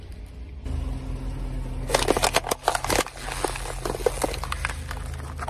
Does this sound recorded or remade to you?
recorded